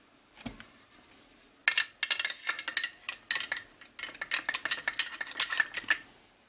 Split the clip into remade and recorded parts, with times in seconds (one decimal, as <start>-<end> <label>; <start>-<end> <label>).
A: 0.0-1.6 remade; 1.6-5.5 recorded; 5.5-6.5 remade

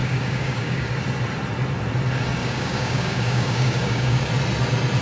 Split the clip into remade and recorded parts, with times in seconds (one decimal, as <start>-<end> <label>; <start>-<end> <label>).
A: 0.0-0.9 remade; 0.9-2.4 recorded; 2.4-4.3 remade; 4.3-5.0 recorded

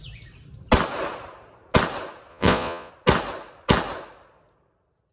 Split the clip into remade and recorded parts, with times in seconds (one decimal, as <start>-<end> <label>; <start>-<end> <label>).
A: 0.0-2.3 recorded; 2.3-2.9 remade; 2.9-5.1 recorded

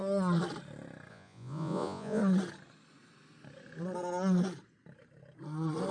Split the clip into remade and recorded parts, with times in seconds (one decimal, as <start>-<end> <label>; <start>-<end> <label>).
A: 0.0-1.1 recorded; 1.1-2.2 remade; 2.2-5.9 recorded